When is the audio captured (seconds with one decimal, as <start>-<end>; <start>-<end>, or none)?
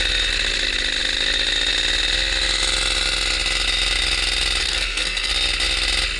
0.0-4.6; 5.3-6.2